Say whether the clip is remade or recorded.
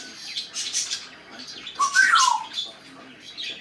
recorded